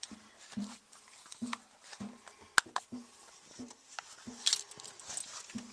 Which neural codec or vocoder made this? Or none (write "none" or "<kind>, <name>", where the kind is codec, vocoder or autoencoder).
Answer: none